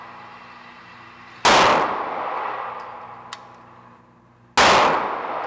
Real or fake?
real